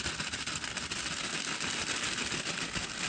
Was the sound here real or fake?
real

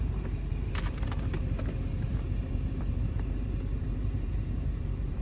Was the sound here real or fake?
fake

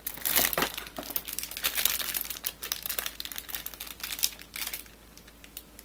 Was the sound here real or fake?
real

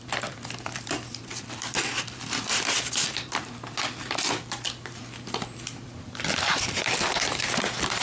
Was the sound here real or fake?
fake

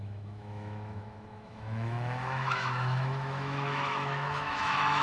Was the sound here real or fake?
fake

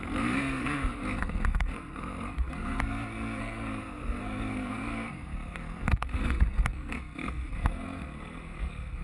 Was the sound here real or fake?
fake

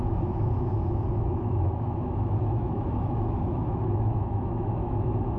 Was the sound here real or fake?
fake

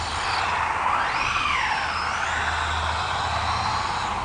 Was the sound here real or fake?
real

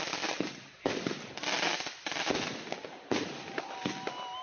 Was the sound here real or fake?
fake